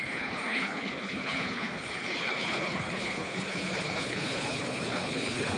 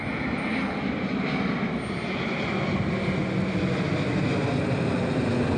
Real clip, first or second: second